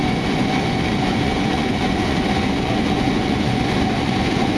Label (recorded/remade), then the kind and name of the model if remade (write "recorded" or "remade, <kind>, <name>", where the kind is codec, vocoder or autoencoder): remade, vocoder, Vocos